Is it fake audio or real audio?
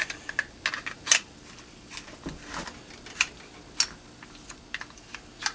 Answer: real